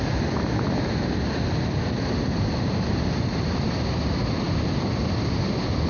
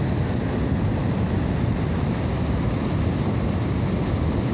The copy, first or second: first